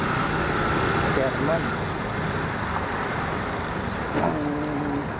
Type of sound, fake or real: real